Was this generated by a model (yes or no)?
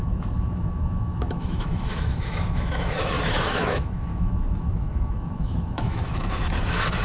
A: yes